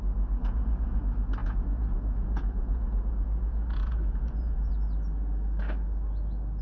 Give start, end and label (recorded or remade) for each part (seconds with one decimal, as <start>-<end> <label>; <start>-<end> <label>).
0.0-0.4 recorded; 0.4-1.0 remade; 1.0-1.4 recorded; 1.4-4.7 remade; 4.7-6.6 recorded